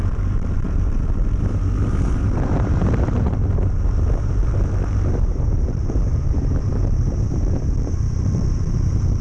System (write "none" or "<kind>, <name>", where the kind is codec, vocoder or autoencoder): vocoder, BigVGAN v2